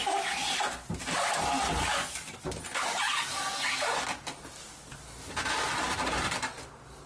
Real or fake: real